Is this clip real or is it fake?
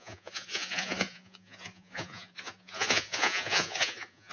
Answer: fake